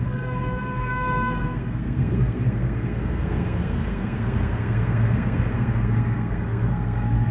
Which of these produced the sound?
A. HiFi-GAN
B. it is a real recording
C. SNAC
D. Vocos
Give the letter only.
C